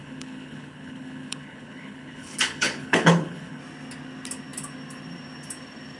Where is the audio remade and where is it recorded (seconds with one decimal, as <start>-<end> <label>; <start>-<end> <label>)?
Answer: 0.0-3.6 remade; 3.6-6.0 recorded